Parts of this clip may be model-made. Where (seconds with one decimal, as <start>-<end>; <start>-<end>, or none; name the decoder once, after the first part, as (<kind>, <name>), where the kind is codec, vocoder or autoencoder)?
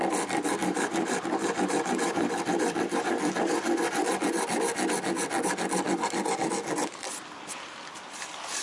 0.6-3.1 (vocoder, BigVGAN v2); 5.9-6.5